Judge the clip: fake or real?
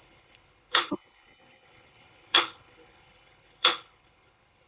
fake